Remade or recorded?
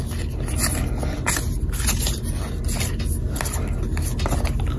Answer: recorded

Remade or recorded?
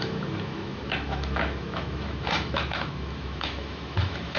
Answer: remade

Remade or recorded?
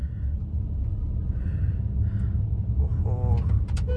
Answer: recorded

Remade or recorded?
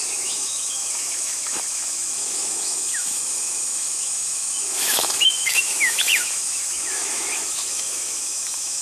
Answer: remade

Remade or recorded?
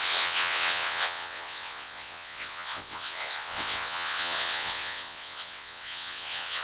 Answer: remade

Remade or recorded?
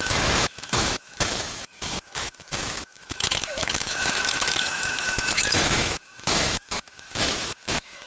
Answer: remade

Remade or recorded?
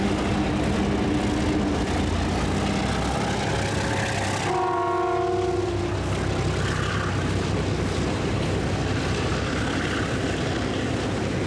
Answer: recorded